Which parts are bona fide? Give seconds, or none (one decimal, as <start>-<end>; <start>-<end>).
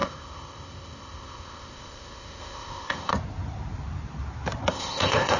3.1-4.7